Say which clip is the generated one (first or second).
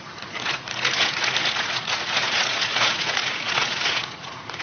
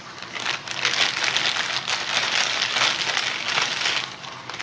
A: first